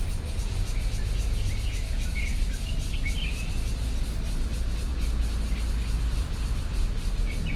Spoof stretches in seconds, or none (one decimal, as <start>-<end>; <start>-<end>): 0.4-2.2